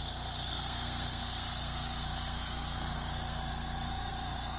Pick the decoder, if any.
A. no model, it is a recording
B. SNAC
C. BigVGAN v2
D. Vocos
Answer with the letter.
B